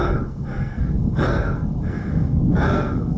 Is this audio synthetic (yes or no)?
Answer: yes